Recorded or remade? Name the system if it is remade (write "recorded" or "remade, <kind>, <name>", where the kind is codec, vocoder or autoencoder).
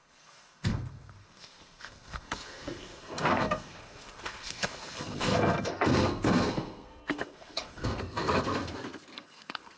remade, codec, SNAC